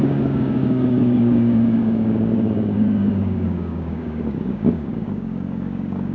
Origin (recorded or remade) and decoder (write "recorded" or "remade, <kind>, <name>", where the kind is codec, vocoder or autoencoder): remade, codec, DAC